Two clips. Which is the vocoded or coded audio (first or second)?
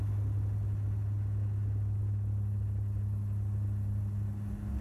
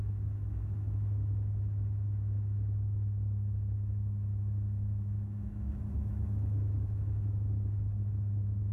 second